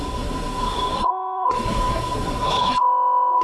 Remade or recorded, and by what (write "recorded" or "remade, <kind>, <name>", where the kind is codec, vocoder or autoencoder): remade, codec, SNAC